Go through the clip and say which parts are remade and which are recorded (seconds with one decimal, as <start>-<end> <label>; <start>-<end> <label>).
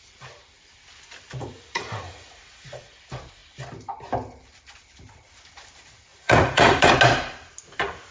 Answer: 0.0-1.4 recorded; 1.4-3.0 remade; 3.0-6.1 recorded; 6.1-6.9 remade; 6.9-8.1 recorded